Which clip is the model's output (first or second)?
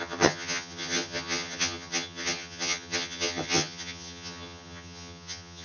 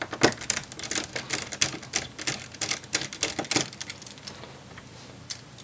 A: first